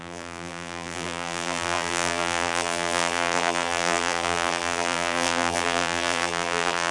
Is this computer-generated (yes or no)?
yes